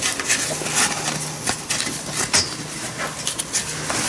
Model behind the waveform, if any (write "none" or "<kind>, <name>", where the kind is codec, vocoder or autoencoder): none